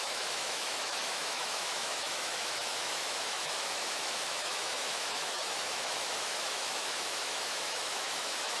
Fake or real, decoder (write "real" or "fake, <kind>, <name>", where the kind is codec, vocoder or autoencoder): fake, autoencoder, DAC-VAE